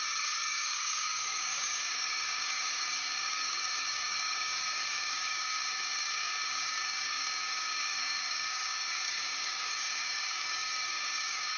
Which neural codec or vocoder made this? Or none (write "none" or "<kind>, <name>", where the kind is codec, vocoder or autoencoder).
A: codec, DAC